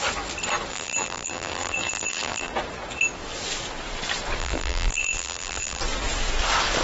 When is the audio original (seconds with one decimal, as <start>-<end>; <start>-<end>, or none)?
0.0-0.7; 2.5-4.4; 5.8-6.8